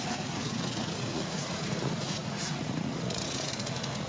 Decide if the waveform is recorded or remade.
remade